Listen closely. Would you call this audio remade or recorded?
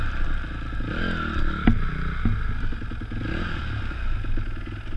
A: recorded